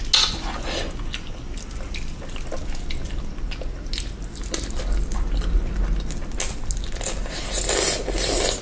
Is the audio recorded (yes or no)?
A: yes